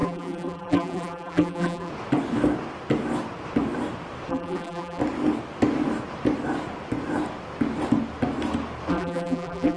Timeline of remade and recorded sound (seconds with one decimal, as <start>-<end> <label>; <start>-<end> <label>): 0.0-1.9 remade; 1.9-4.3 recorded; 4.3-5.0 remade; 5.0-8.9 recorded; 8.9-9.8 remade